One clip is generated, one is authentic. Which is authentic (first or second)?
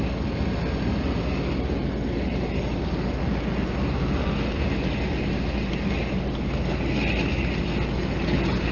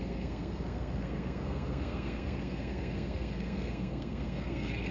first